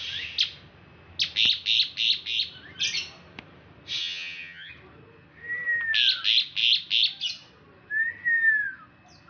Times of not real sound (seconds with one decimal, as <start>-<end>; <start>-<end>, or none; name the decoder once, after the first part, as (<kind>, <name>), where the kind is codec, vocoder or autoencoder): 4.0-4.7 (vocoder, HiFi-GAN)